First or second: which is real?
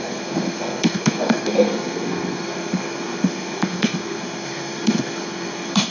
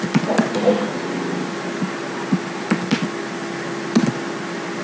second